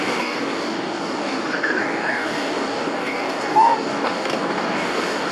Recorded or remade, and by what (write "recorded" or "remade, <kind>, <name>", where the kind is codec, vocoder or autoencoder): remade, codec, DAC